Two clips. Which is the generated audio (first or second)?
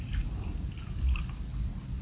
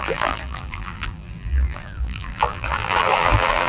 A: second